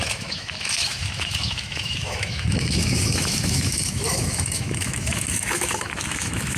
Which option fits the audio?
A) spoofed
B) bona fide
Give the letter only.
A